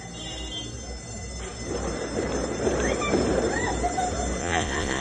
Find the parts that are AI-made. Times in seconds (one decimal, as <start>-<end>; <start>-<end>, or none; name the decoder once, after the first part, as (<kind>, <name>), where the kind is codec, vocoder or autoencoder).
4.4-5.0 (vocoder, Vocos)